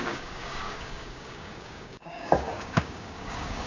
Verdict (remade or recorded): remade